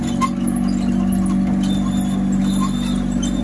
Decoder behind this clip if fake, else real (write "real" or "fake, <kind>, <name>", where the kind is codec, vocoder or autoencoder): real